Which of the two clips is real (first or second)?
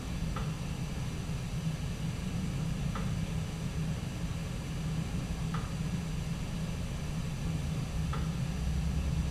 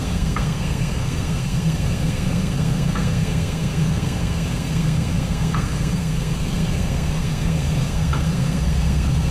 first